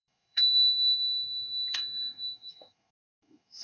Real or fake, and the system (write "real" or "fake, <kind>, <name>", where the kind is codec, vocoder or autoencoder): fake, autoencoder, DAC-VAE